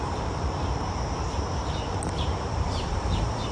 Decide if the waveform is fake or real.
fake